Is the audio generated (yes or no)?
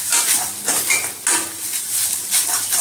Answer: no